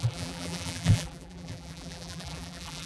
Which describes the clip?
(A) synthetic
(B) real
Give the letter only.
A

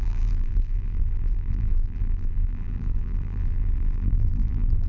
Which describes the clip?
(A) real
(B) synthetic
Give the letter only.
B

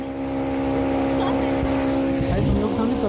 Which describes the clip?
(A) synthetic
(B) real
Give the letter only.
B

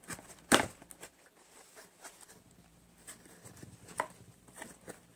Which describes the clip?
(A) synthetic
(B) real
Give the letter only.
B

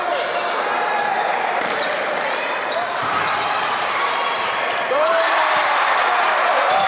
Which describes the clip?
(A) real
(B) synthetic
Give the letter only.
B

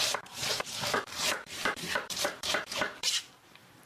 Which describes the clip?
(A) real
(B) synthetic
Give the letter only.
B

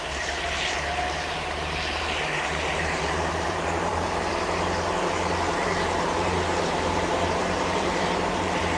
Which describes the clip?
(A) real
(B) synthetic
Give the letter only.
B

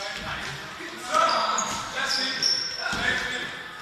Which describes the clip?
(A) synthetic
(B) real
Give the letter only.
A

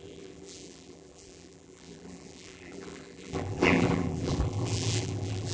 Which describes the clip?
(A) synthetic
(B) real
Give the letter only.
A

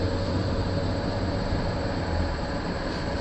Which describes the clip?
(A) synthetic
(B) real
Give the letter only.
A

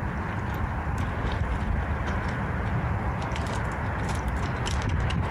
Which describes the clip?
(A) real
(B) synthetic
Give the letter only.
A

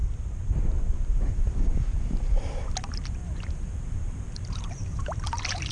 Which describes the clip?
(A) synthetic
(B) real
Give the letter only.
A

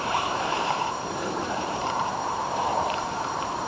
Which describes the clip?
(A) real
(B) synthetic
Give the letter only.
B